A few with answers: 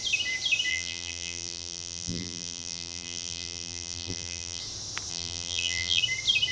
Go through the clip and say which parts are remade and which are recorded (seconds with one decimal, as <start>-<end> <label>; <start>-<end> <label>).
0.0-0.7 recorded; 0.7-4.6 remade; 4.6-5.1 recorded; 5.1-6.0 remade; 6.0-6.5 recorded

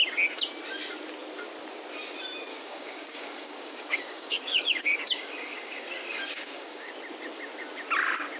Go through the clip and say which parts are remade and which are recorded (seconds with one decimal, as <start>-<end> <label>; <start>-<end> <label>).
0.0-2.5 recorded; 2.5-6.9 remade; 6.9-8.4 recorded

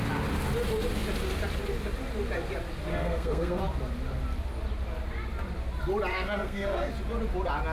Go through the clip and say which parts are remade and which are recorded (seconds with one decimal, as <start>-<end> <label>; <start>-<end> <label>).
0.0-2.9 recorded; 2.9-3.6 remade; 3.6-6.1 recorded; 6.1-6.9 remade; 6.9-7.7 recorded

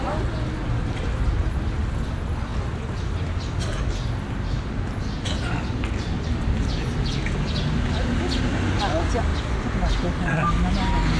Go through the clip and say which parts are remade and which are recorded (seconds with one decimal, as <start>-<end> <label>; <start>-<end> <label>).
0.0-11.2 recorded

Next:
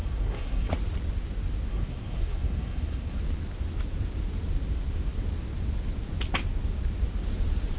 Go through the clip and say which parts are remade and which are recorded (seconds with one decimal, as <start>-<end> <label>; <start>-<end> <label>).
0.0-0.7 remade; 0.7-1.7 recorded; 1.7-3.2 remade; 3.2-7.8 recorded